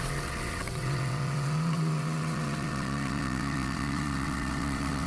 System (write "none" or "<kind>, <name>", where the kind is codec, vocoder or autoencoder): vocoder, WaveNeXt